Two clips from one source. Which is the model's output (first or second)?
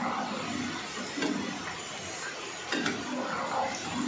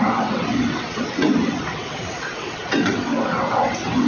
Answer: second